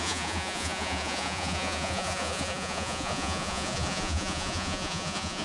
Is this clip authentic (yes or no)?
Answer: no